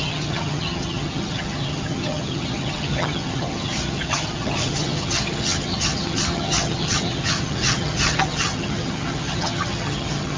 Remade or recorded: remade